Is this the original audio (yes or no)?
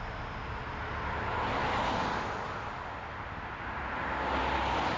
yes